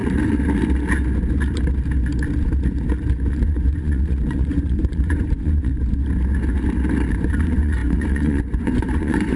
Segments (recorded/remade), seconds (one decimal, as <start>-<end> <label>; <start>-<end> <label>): 0.0-3.3 recorded; 3.3-5.7 remade; 5.7-7.1 recorded; 7.1-9.4 remade